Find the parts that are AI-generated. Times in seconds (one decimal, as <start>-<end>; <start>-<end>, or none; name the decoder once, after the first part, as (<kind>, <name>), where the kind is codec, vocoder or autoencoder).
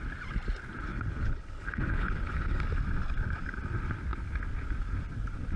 0.9-2.6 (codec, HILCodec)